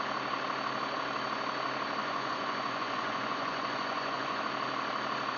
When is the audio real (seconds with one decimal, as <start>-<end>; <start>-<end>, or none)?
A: 0.0-2.0; 4.4-5.4

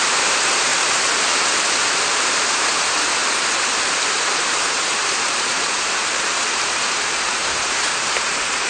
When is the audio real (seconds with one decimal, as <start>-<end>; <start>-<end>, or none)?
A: 3.2-4.5

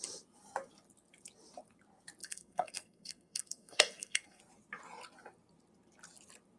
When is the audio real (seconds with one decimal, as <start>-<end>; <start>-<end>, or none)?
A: 0.0-2.2; 4.4-6.6

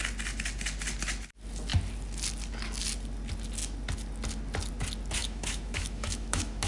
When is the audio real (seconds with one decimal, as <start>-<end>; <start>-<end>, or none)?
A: 0.0-5.2